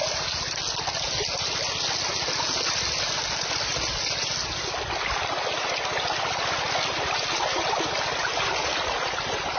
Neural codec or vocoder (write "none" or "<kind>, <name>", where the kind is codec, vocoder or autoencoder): none